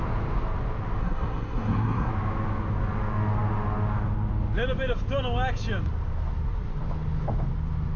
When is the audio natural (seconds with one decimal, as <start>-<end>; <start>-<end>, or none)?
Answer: 0.0-1.0; 2.1-8.0

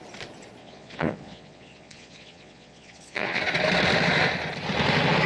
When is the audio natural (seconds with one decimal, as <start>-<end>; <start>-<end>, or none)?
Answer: 0.0-0.6; 3.4-5.3

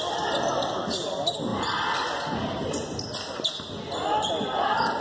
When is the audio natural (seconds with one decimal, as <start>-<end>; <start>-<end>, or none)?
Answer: 0.0-5.0

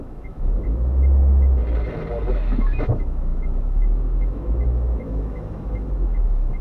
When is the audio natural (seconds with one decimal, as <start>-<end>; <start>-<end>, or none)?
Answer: 1.6-2.3